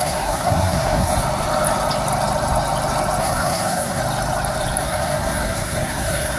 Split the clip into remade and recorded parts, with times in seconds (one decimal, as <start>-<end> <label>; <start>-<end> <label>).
0.0-1.1 remade; 1.1-3.2 recorded; 3.2-4.0 remade; 4.0-4.8 recorded; 4.8-6.4 remade